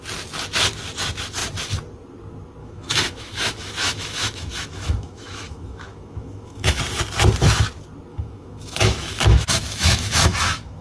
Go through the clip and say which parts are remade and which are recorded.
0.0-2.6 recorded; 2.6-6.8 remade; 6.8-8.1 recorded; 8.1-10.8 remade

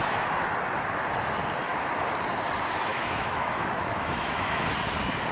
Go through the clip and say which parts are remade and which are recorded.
0.0-2.9 recorded; 2.9-4.6 remade; 4.6-5.3 recorded

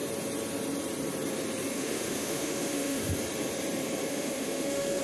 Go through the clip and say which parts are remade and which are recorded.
0.0-1.7 recorded; 1.7-3.0 remade; 3.0-4.1 recorded; 4.1-5.0 remade

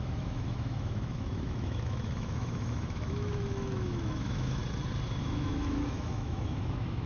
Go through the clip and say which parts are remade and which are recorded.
0.0-4.6 remade; 4.6-5.2 recorded; 5.2-7.1 remade